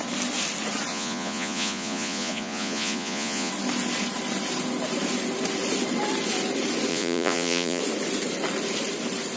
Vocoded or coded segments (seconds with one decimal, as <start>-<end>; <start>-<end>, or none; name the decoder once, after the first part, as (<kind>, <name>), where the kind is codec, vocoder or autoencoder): 0.9-3.5 (vocoder, Vocos); 6.9-7.8